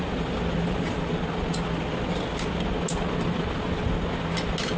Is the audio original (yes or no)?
yes